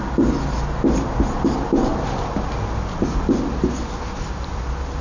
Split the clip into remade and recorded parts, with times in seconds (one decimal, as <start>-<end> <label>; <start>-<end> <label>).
0.0-5.0 recorded